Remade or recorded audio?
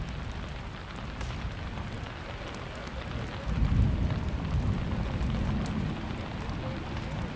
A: recorded